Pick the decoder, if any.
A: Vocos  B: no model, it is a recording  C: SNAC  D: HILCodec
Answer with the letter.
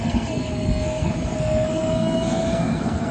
C